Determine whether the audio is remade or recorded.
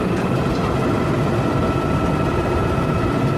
recorded